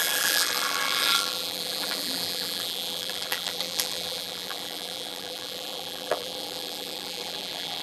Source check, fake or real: fake